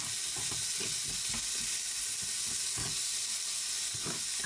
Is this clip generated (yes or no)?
no